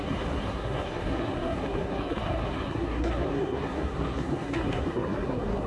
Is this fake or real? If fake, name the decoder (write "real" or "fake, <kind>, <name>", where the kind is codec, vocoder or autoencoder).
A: fake, codec, SNAC